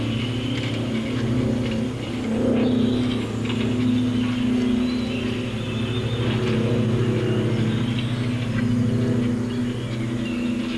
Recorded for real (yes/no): yes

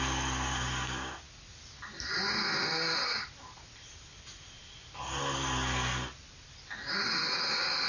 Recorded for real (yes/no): yes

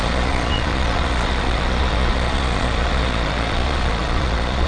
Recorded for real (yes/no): no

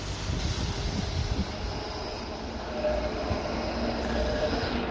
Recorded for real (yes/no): yes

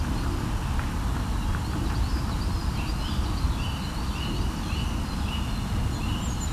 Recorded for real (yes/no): yes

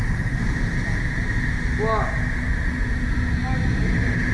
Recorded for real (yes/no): yes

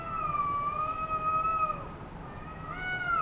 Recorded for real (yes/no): yes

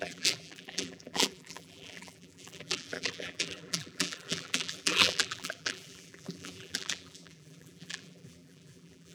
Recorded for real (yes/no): no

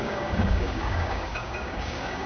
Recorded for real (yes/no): no